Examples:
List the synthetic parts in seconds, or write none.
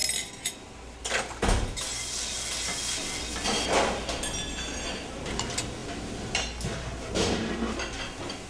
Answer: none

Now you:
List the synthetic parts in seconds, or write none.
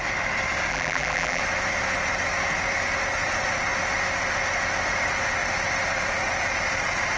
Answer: 0.7-1.4 (vocoder, BigVGAN v2)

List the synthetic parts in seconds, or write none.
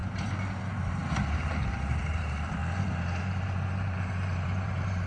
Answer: 0.6-2.6 (vocoder, BigVGAN v2); 3.2-5.1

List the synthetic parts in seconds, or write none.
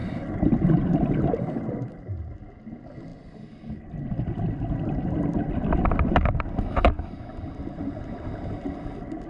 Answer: 0.0-1.5 (vocoder, BigVGAN v2)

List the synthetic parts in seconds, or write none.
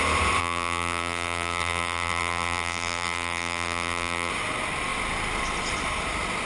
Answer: 0.4-4.3 (vocoder, BigVGAN v2)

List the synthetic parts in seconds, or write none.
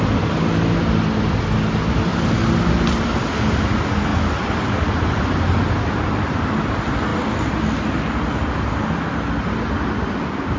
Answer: none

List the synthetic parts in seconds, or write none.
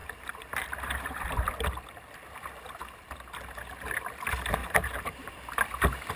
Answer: 0.0-1.5 (vocoder, BigVGAN v2); 4.6-5.3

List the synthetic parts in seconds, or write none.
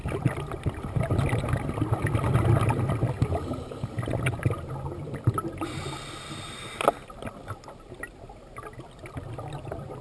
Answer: none